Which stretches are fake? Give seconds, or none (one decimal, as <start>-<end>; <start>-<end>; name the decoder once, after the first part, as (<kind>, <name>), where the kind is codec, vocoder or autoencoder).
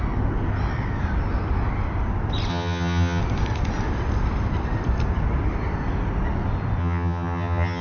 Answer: 2.5-3.2 (vocoder, HiFi-GAN); 6.8-7.8